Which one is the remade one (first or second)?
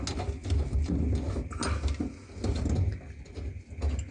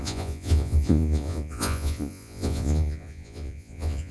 second